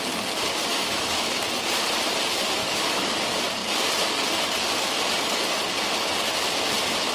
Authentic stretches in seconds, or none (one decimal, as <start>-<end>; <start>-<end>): 0.0-0.7; 1.4-2.6; 3.2-7.1